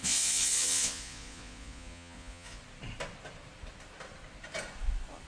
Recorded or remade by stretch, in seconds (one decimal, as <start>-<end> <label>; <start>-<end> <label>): 0.0-2.6 remade; 2.6-5.3 recorded